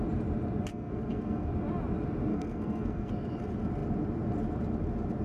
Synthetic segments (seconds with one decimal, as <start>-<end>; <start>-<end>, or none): 0.7-1.5; 2.3-3.1